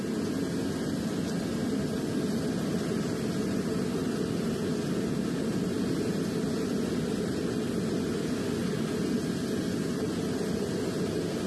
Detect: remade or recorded recorded